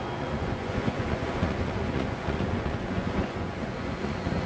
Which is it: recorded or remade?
remade